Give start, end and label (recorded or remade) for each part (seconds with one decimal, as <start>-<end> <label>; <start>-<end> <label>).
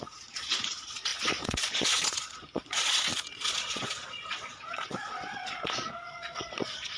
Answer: 0.0-7.0 remade